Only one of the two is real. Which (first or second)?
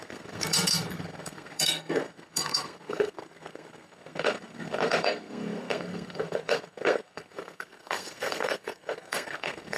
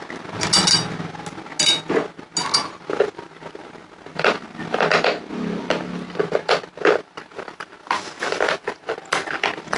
second